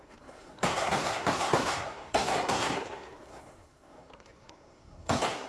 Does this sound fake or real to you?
fake